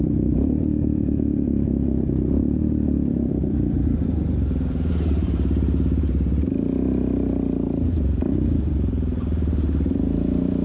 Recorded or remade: remade